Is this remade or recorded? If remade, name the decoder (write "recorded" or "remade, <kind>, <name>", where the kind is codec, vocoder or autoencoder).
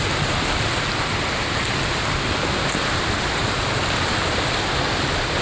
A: recorded